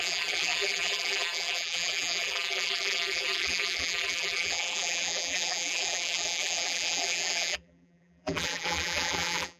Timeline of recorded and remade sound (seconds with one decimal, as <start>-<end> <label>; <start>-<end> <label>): 0.0-9.6 remade